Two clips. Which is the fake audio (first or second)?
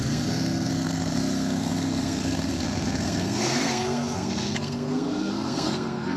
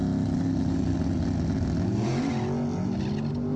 first